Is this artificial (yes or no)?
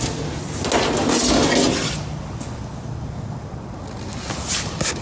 no